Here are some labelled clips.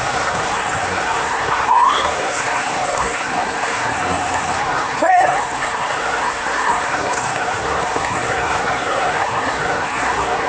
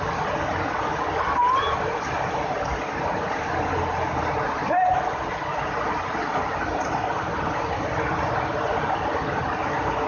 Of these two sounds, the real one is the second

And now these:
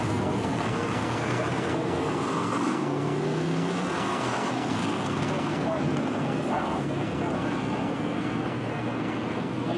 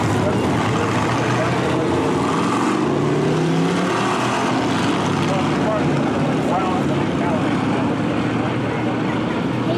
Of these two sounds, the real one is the second